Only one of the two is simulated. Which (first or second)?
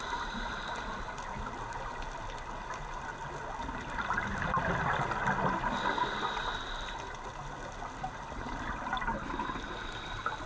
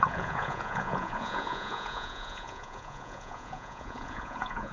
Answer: second